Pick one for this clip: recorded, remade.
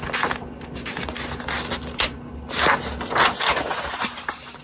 recorded